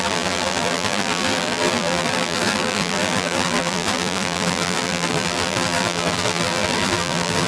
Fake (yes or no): yes